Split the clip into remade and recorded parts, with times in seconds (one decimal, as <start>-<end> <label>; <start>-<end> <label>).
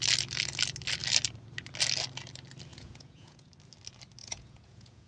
0.0-2.7 recorded; 2.7-3.5 remade; 3.5-4.2 recorded; 4.2-5.1 remade